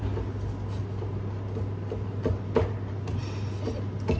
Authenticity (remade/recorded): recorded